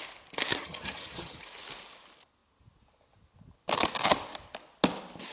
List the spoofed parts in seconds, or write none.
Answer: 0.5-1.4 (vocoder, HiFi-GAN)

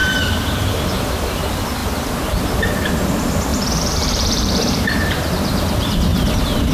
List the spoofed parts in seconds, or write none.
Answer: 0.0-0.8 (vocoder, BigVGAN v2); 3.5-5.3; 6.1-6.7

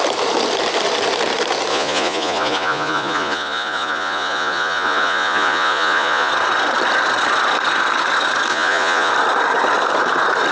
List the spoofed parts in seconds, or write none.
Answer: 1.7-6.3 (vocoder, Vocos); 8.5-9.1

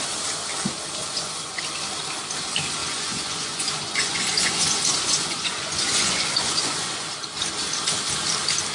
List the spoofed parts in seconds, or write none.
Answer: 1.0-1.6 (vocoder, Vocos); 2.8-7.1

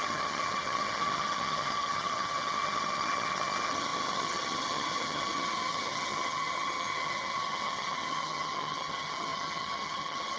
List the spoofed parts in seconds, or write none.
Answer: 0.0-10.4 (vocoder, HiFi-GAN)